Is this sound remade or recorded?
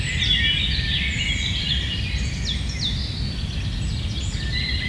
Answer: recorded